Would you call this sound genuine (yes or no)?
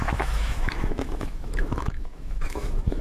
no